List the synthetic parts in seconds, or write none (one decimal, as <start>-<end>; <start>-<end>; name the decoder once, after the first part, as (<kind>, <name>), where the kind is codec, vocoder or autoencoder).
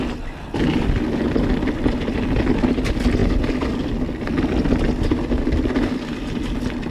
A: none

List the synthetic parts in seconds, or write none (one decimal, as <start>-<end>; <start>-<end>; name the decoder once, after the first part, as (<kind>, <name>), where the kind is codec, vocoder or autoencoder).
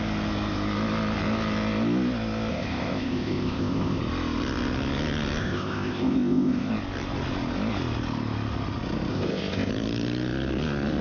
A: 2.5-4.0 (codec, ZipCodec); 5.4-6.7; 9.1-9.7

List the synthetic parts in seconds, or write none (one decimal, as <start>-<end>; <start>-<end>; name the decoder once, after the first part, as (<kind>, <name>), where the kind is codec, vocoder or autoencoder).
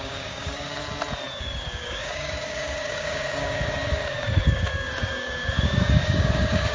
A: 0.0-0.8 (codec, DAC); 1.4-6.7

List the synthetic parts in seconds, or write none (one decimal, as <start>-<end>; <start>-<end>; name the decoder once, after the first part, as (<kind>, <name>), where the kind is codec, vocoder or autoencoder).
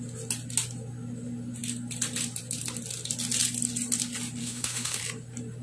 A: 4.4-5.0 (autoencoder, DAC-VAE)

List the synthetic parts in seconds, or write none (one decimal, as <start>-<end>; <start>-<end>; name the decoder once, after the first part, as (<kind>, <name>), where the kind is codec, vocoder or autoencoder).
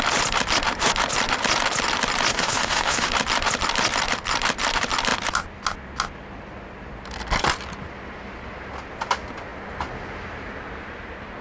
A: 2.3-3.1 (autoencoder, DAC-VAE)